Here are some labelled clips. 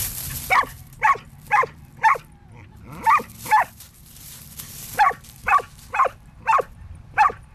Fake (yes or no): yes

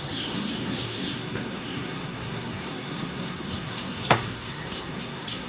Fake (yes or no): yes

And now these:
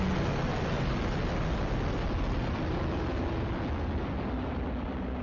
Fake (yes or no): no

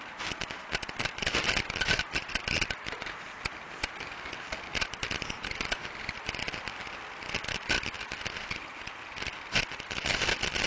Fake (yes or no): no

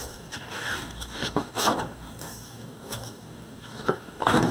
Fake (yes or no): yes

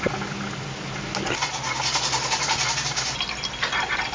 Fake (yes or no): no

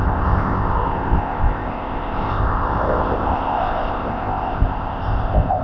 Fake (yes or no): yes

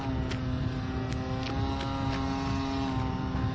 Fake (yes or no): no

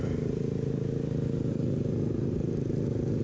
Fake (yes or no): no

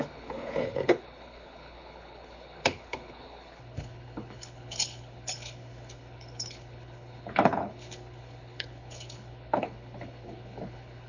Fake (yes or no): yes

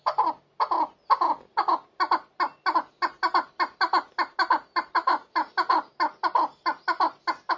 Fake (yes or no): no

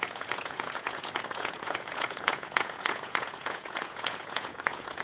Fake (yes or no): yes